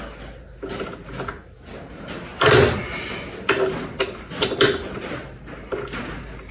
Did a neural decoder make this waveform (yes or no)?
no